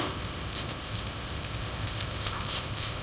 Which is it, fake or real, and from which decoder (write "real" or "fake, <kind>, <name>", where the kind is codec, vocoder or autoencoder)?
fake, codec, ZipCodec